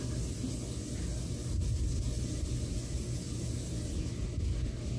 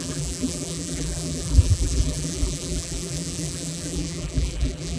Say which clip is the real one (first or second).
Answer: first